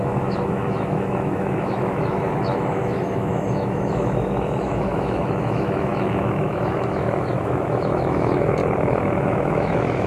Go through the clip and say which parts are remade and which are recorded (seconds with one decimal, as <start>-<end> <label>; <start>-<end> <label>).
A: 0.0-8.6 remade; 8.6-9.2 recorded; 9.2-10.1 remade